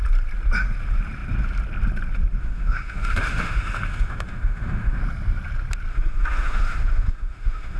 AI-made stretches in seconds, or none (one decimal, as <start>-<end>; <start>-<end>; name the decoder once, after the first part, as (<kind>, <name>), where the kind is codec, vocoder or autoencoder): 2.4-5.0 (autoencoder, DAC-VAE); 5.9-7.8